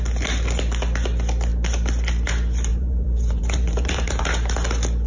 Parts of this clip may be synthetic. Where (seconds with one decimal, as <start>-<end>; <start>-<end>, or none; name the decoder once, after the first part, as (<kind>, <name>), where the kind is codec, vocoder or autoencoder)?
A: 2.7-4.2 (vocoder, BigVGAN v2)